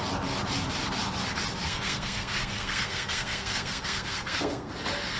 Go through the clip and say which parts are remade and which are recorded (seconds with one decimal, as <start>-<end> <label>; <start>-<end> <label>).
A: 0.0-1.6 recorded; 1.6-4.7 remade; 4.7-5.2 recorded